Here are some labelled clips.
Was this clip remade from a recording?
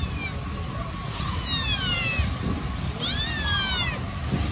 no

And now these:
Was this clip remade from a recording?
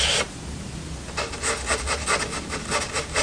no